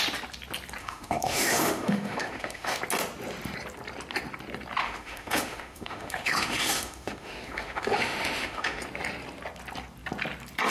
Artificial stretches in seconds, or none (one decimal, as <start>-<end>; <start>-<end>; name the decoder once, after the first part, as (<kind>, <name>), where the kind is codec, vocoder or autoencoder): 0.8-2.8 (autoencoder, DAC-VAE); 4.8-8.8